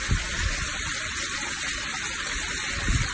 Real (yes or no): yes